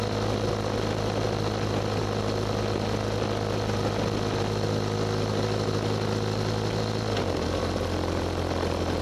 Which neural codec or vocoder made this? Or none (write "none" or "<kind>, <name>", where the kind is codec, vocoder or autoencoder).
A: none